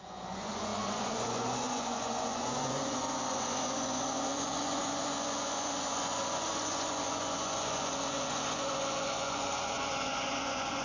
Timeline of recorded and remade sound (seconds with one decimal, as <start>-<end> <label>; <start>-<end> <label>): 0.0-10.8 remade